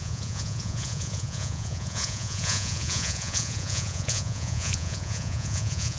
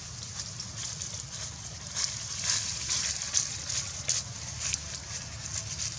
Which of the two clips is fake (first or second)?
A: first